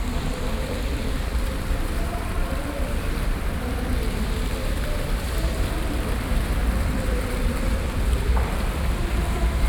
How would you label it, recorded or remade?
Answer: remade